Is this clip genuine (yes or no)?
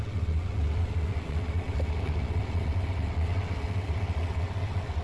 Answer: no